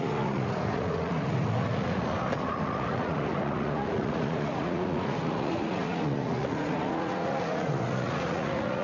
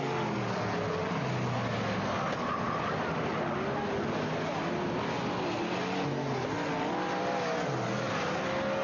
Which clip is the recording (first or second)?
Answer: second